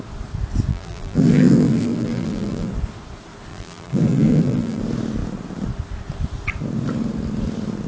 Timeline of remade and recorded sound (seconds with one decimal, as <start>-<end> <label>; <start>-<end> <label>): 0.0-0.7 recorded; 0.7-2.7 remade; 2.7-3.5 recorded; 3.5-4.8 remade; 4.8-7.9 recorded